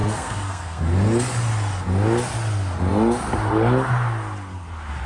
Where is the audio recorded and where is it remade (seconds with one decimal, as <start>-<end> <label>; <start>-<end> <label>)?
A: 0.0-0.8 remade; 0.8-5.1 recorded